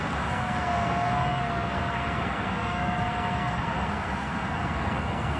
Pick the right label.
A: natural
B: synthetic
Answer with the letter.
B